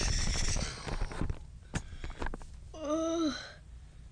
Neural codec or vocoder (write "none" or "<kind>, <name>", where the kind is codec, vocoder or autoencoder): none